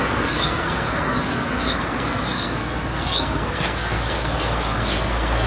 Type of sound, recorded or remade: remade